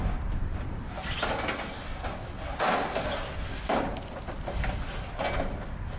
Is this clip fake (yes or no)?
no